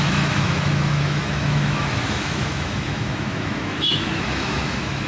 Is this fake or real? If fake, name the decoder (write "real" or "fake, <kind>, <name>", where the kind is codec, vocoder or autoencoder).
fake, autoencoder, DAC-VAE